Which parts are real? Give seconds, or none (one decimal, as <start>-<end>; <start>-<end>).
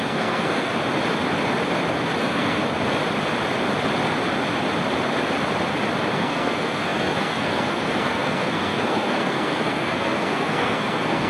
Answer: 0.7-2.2; 2.6-6.1